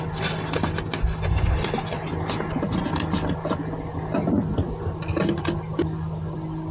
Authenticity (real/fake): real